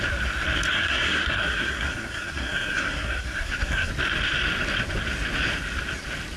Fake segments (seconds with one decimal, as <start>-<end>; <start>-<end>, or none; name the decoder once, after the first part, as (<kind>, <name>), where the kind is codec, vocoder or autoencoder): 0.7-3.9 (codec, SNAC)